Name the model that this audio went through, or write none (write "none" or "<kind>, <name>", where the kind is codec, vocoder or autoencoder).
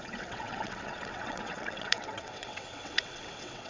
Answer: vocoder, WaveNeXt